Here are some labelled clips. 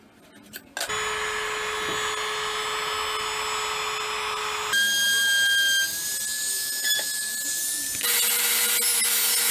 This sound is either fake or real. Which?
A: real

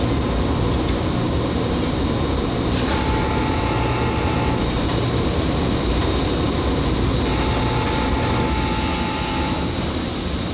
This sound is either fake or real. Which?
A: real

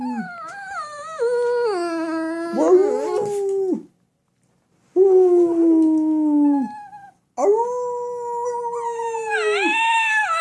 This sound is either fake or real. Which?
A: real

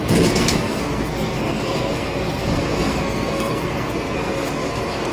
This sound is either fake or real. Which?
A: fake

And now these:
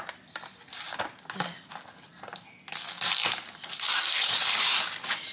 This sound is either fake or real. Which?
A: real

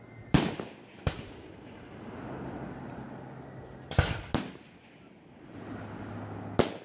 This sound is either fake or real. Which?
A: real